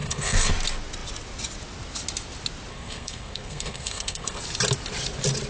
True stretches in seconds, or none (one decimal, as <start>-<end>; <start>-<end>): 0.5-2.7; 4.4-5.5

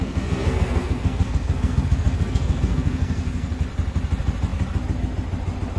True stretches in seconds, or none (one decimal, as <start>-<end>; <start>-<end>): 3.5-5.8

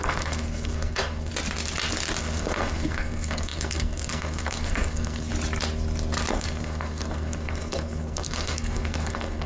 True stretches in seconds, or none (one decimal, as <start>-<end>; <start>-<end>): 1.3-2.2; 5.3-6.3

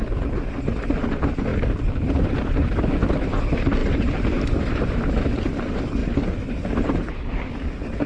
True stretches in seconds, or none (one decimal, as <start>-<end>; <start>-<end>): 0.0-8.1

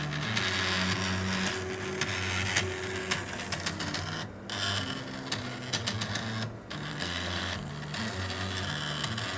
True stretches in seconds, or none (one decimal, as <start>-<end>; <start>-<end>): 0.0-6.9; 7.7-9.4

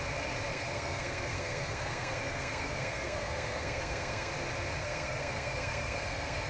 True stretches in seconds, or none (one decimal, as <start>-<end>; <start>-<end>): 0.0-0.5; 4.3-4.8

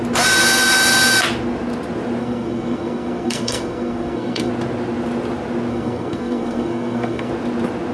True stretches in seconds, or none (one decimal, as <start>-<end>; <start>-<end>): 0.0-2.2; 4.5-5.7; 7.3-7.9